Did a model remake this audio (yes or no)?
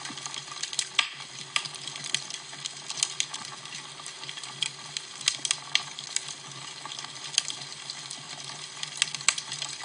no